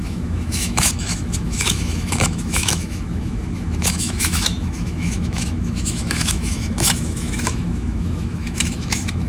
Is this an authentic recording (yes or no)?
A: no